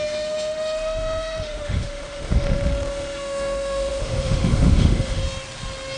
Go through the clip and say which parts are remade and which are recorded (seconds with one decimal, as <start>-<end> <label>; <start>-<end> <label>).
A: 0.0-5.2 remade; 5.2-6.0 recorded